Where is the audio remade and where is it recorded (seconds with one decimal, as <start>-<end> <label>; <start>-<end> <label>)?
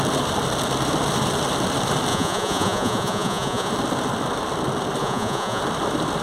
0.0-2.1 recorded; 2.1-3.7 remade; 3.7-5.0 recorded; 5.0-5.6 remade; 5.6-6.2 recorded